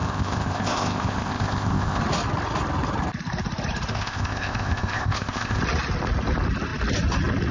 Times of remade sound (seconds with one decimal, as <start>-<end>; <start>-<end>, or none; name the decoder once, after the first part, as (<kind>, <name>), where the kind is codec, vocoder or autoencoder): 0.0-2.0 (codec, ZipCodec); 3.9-5.6